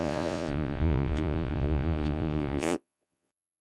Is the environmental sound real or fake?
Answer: fake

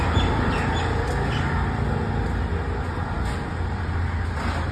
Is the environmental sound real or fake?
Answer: real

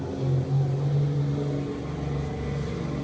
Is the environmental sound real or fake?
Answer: real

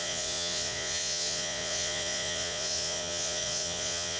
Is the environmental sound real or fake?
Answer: fake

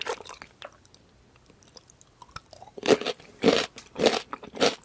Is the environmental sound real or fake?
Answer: real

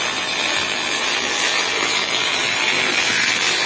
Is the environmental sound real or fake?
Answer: fake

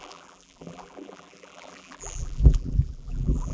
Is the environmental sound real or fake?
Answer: fake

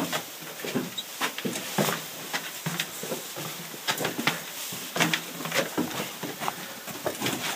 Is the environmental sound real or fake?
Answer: fake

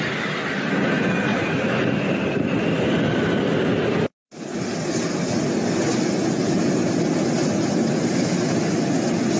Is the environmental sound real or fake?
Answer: real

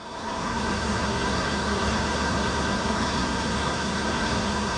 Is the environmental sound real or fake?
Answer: fake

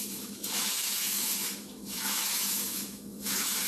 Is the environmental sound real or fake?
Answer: fake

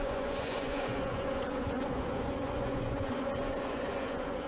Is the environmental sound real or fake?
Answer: fake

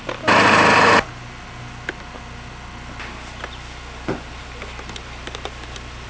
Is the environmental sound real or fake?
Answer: real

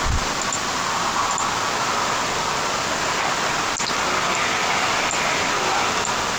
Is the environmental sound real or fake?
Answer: real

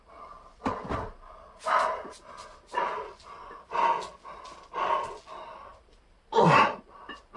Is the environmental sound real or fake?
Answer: real